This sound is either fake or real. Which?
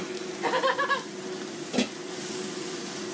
real